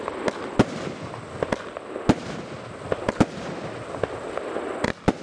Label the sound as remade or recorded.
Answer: recorded